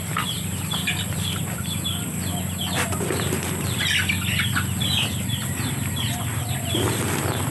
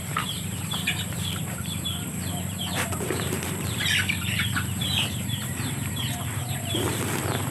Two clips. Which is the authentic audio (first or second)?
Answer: first